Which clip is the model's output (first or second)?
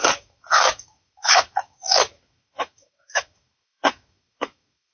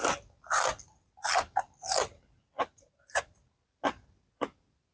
first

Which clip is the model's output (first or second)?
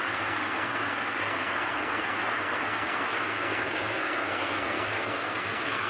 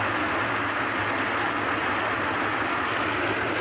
first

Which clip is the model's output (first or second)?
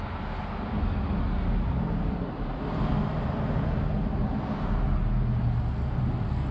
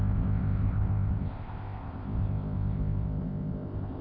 second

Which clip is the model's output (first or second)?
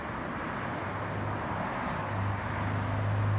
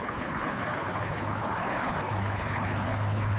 second